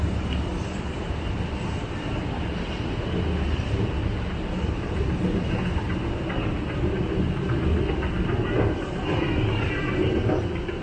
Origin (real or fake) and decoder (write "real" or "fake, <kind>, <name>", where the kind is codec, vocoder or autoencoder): real